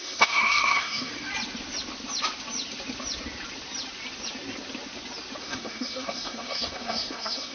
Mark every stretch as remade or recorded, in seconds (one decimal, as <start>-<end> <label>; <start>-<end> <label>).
0.0-1.1 remade; 1.1-5.4 recorded; 5.4-7.5 remade